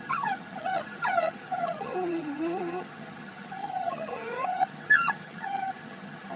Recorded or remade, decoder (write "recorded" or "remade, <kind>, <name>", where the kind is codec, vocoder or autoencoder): remade, vocoder, HiFi-GAN